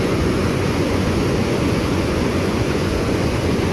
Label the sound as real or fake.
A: fake